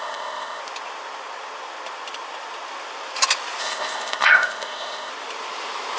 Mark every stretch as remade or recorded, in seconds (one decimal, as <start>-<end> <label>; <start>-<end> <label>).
0.0-0.6 remade; 0.6-3.6 recorded; 3.6-5.1 remade; 5.1-6.0 recorded